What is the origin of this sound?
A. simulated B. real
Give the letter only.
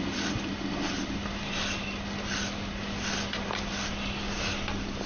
B